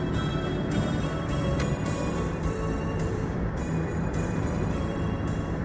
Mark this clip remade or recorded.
remade